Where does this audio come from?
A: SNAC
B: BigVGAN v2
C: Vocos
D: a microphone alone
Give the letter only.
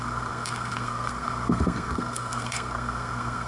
A